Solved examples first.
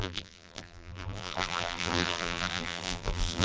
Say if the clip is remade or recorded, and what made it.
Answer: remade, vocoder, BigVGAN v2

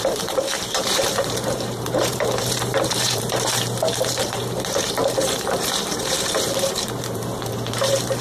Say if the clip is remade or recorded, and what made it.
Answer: remade, vocoder, BigVGAN v2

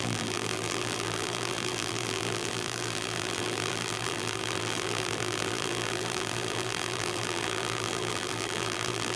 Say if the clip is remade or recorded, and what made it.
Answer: remade, vocoder, BigVGAN v2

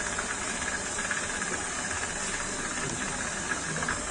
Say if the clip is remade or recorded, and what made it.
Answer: remade, vocoder, BigVGAN v2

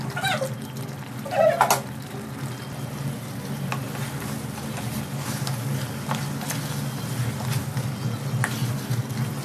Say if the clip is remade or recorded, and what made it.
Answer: recorded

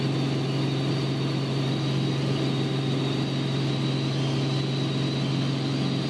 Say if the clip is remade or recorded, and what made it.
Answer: recorded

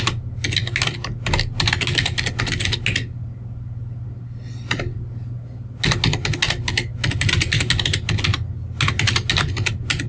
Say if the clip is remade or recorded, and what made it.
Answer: recorded